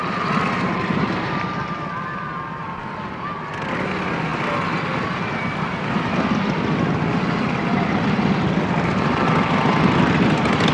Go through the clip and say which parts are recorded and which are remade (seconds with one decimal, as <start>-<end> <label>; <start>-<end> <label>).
0.0-10.7 recorded